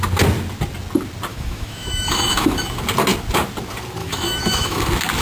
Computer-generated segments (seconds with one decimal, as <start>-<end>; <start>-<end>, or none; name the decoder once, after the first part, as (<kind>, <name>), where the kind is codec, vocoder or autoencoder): 1.3-2.6 (autoencoder, DAC-VAE); 4.0-4.8